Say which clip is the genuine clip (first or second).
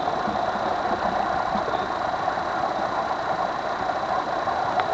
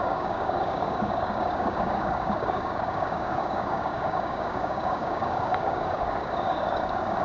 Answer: first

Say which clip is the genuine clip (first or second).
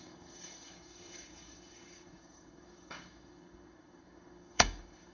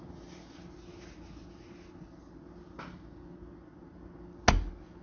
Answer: second